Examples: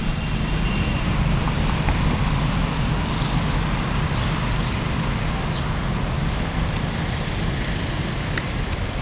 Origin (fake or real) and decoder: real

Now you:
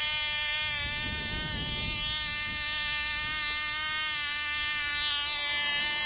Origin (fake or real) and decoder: real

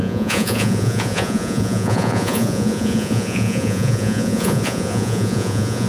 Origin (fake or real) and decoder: fake, vocoder, Vocos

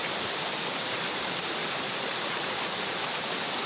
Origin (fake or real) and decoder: real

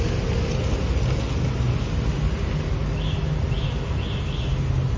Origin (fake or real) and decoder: real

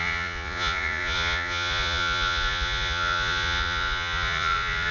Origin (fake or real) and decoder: fake, vocoder, Vocos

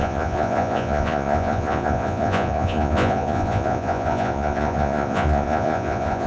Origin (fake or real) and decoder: fake, vocoder, Vocos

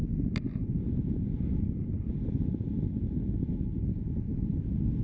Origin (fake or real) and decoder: real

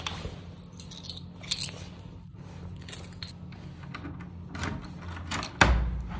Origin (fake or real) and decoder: real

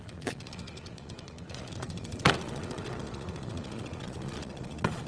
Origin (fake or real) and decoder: fake, vocoder, Vocos